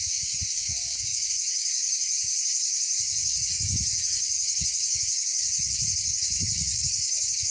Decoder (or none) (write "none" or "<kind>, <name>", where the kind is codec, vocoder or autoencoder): codec, DAC